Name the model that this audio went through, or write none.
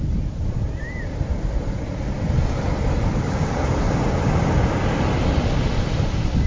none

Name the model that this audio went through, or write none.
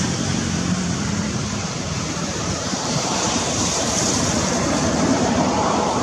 vocoder, BigVGAN v2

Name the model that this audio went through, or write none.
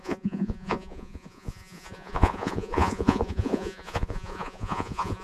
vocoder, Vocos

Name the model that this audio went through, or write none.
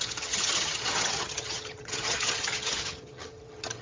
vocoder, HiFi-GAN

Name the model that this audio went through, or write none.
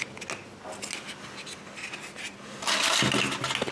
none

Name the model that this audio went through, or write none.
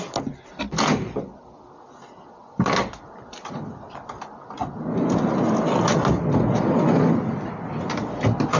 none